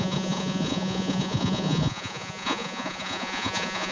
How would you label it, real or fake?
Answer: fake